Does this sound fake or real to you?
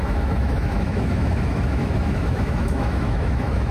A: fake